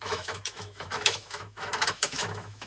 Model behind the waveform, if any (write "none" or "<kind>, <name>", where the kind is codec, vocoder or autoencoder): autoencoder, DAC-VAE